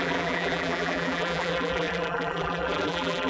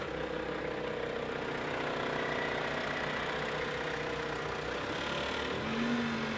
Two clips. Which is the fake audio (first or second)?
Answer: first